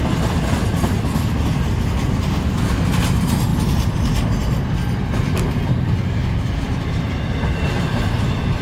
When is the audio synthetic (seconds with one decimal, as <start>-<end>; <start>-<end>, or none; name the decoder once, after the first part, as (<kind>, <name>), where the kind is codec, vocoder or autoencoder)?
none